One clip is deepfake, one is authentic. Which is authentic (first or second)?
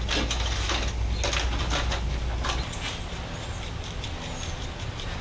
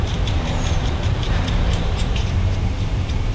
first